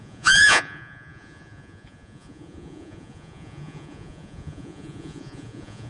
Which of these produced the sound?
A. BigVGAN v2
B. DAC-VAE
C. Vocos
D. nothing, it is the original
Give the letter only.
C